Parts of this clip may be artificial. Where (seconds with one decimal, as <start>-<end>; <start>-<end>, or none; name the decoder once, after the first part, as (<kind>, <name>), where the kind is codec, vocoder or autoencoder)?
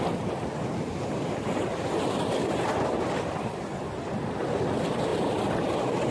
none